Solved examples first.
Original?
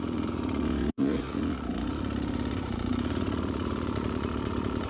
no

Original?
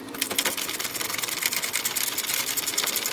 yes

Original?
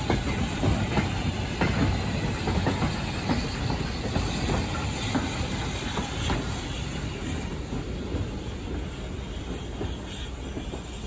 yes